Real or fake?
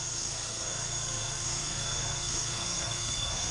fake